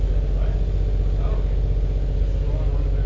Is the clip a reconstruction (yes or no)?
no